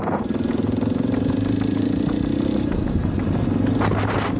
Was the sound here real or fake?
real